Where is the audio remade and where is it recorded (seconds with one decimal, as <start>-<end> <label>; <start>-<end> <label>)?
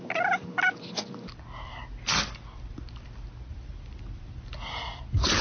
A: 0.0-3.5 recorded; 3.5-5.0 remade; 5.0-5.4 recorded